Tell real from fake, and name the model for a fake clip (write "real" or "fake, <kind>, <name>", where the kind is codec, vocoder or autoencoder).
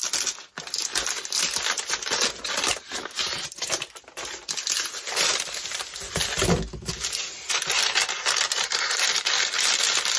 real